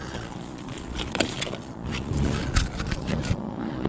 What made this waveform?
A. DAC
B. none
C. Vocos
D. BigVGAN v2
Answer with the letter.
C